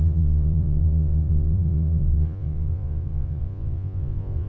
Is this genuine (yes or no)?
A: no